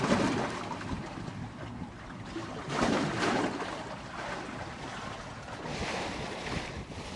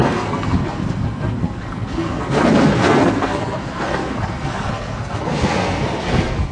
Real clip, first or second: first